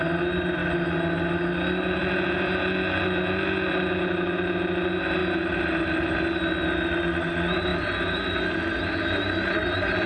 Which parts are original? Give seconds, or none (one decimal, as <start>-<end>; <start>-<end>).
0.0-10.1